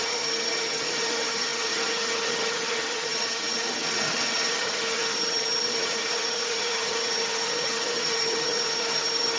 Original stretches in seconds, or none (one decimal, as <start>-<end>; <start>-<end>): none